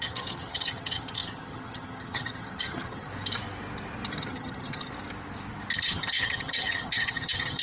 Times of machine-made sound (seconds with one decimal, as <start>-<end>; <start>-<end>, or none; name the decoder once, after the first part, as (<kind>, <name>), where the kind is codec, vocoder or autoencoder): 0.0-3.1 (vocoder, HiFi-GAN); 4.2-4.9; 5.8-7.6